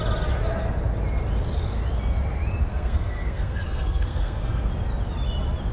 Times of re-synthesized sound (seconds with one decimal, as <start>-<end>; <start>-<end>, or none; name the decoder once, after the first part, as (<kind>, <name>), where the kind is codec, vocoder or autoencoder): 2.7-4.7 (codec, SNAC)

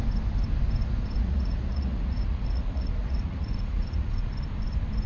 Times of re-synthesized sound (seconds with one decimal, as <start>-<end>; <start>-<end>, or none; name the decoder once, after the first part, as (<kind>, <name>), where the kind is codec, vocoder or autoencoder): 1.2-4.3 (vocoder, Vocos)

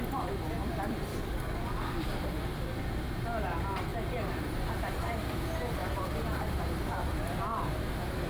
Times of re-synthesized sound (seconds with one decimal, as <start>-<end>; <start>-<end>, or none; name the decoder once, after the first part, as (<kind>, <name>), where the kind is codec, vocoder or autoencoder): 1.1-2.1 (codec, DAC)

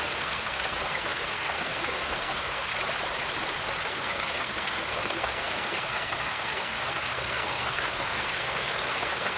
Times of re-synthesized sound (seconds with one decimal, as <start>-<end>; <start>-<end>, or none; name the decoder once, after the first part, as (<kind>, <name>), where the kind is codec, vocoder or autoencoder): 0.0-2.7 (codec, SNAC); 3.9-9.4

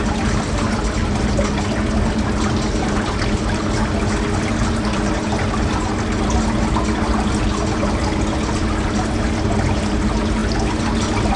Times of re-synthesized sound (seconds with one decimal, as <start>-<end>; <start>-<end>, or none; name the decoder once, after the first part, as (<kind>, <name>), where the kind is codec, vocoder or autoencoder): none

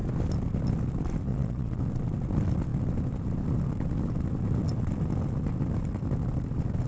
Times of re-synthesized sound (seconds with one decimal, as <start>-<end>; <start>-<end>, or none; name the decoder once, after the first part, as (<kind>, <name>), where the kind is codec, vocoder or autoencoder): 1.3-1.8 (vocoder, Vocos)

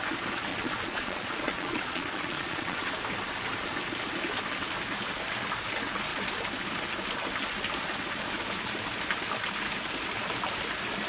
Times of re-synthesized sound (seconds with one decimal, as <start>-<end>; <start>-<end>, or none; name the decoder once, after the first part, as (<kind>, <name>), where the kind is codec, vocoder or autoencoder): 0.5-2.9 (vocoder, Vocos)